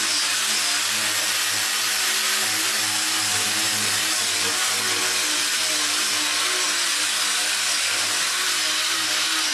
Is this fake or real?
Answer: real